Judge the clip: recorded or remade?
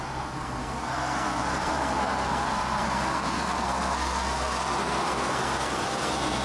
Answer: remade